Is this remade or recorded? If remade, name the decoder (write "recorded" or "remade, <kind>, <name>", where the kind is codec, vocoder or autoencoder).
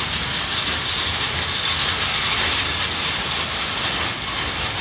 recorded